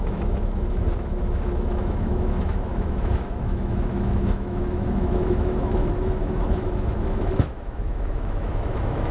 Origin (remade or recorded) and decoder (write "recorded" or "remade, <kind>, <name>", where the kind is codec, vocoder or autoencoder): remade, autoencoder, DAC-VAE